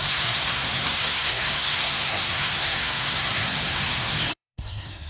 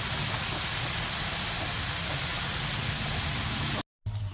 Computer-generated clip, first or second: first